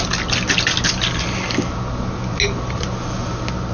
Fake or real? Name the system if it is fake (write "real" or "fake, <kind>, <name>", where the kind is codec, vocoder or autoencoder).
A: real